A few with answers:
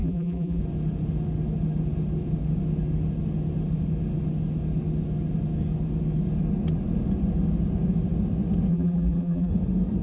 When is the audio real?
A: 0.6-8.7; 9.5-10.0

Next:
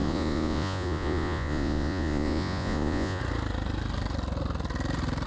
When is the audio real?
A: 3.2-5.3

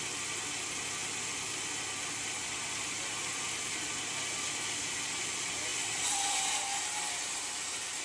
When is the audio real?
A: 0.0-8.0